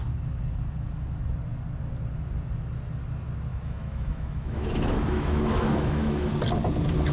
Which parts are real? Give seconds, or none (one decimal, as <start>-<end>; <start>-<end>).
0.0-3.5; 6.3-7.1

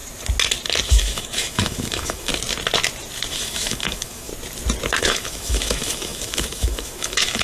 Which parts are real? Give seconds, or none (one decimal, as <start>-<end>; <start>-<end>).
0.0-0.9; 2.3-3.3; 4.3-5.0

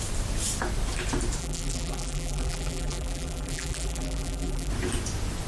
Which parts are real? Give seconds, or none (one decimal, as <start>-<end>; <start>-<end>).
0.0-1.4; 4.7-5.5